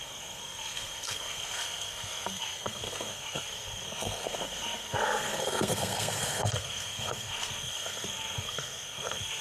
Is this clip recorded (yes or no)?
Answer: no